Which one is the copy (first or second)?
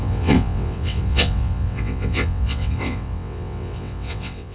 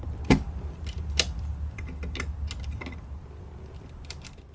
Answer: first